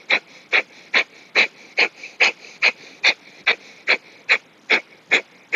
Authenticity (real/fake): real